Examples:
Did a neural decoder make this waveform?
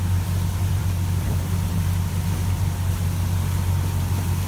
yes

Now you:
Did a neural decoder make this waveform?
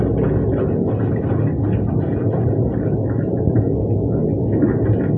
no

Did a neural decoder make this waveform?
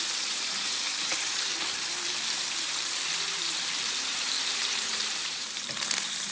yes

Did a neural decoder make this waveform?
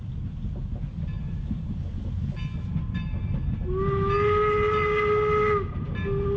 no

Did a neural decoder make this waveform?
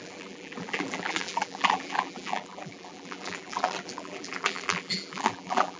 yes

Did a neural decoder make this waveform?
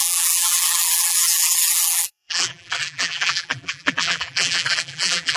yes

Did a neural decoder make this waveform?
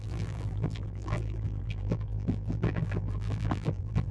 yes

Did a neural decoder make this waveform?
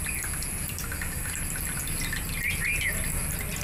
no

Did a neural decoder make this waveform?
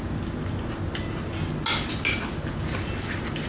no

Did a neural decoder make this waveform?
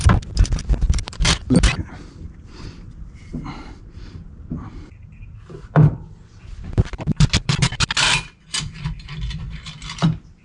yes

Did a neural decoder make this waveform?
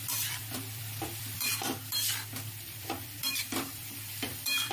yes